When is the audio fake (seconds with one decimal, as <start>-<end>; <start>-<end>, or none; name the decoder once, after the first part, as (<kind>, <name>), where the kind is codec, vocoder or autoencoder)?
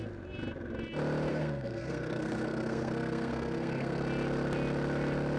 1.3-4.0 (codec, SNAC)